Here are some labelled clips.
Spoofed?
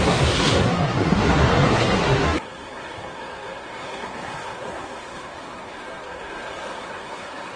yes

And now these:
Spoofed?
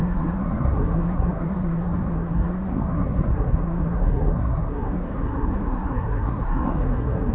yes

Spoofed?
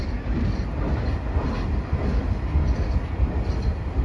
no